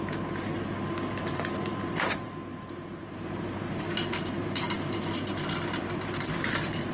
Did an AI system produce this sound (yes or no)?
yes